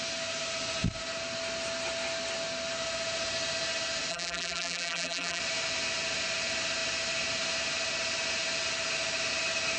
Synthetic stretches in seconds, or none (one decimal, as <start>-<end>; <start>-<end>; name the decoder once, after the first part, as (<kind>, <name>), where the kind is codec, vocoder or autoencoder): 4.1-5.4 (vocoder, BigVGAN v2)